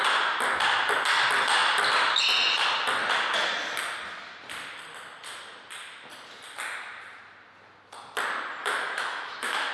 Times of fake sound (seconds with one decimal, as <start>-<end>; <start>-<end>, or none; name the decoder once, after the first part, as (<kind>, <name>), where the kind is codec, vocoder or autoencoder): 8.6-9.7 (autoencoder, DAC-VAE)